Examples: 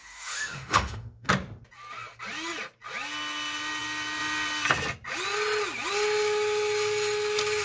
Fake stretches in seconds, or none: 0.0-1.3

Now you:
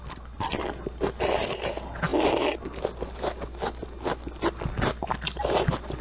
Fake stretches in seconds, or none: none

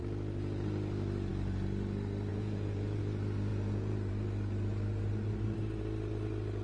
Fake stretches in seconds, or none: 2.3-3.0; 3.5-4.1

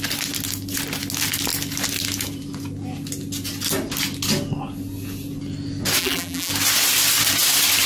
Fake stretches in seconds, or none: 6.0-6.5